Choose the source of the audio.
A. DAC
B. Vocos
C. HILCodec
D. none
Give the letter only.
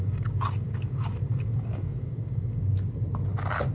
D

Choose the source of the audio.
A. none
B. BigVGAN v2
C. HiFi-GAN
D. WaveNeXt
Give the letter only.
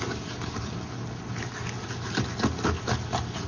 A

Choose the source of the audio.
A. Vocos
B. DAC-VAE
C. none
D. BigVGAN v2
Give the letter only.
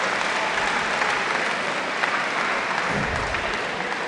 C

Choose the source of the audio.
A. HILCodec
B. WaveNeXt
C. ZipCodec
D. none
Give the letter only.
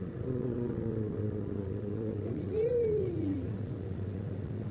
B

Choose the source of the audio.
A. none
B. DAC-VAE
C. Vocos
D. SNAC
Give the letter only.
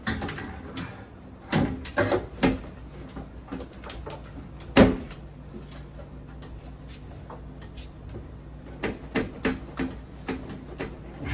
A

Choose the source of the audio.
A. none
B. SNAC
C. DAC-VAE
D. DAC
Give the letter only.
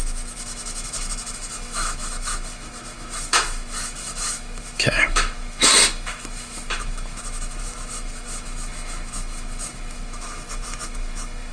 C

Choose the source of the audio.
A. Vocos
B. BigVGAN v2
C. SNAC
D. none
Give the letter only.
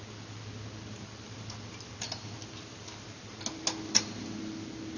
D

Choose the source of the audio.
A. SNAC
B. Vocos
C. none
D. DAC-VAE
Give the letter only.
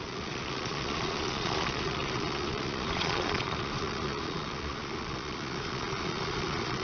B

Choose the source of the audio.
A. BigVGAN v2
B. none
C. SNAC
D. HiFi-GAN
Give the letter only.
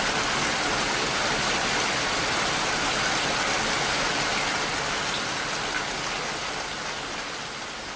B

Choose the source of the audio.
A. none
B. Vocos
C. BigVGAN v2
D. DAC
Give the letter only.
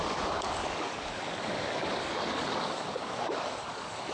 D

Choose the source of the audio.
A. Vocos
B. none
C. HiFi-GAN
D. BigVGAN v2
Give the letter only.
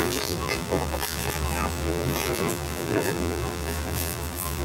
D